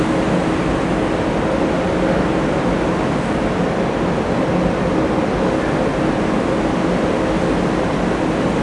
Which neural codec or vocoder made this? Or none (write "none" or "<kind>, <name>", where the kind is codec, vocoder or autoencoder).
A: none